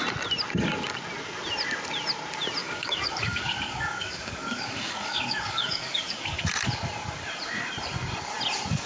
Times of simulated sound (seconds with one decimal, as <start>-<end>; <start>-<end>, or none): 2.6-6.4